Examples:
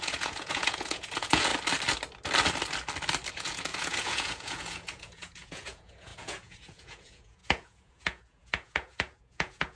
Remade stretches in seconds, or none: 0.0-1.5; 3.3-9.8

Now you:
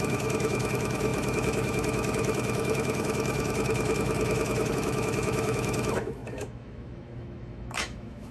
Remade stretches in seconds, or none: 0.0-8.3